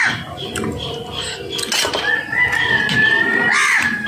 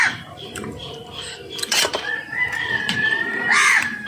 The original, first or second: first